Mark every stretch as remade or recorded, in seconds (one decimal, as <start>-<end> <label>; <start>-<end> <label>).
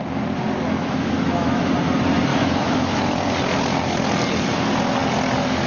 0.0-0.8 recorded; 0.8-1.7 remade; 1.7-2.3 recorded; 2.3-3.0 remade; 3.0-5.7 recorded